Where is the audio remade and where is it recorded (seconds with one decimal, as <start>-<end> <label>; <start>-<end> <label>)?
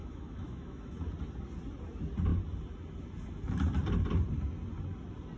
0.0-1.1 remade; 1.1-5.4 recorded